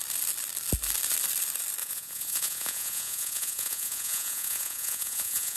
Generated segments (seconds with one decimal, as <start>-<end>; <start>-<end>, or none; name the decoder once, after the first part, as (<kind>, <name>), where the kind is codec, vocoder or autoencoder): 1.8-5.6 (vocoder, Vocos)